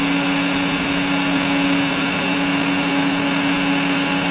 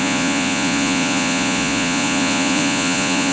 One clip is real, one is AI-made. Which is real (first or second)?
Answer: first